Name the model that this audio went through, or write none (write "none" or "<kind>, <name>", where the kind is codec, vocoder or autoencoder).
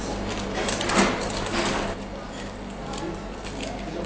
none